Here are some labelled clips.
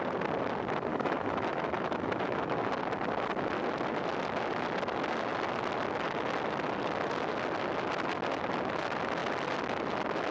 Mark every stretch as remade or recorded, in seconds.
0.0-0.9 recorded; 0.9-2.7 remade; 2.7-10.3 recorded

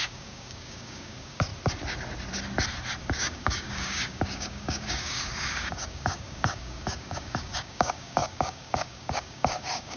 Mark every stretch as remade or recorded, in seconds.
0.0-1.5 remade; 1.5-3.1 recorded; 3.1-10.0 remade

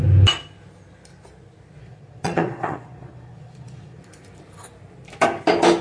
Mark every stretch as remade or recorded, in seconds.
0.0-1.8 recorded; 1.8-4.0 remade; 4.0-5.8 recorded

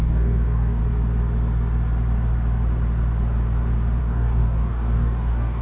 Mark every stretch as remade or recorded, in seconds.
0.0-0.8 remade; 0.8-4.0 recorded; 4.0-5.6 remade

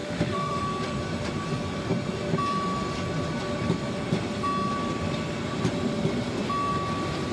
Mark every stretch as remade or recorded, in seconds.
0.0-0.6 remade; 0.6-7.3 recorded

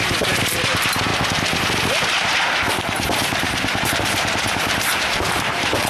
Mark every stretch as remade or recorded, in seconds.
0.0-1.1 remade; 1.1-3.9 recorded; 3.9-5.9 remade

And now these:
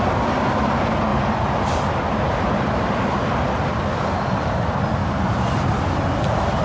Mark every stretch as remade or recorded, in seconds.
0.0-1.1 recorded; 1.1-3.3 remade; 3.3-5.0 recorded; 5.0-5.6 remade; 5.6-6.6 recorded